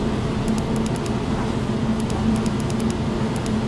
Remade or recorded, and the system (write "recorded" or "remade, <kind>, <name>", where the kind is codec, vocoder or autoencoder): recorded